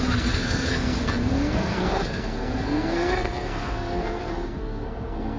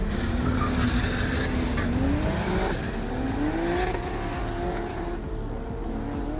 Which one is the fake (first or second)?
first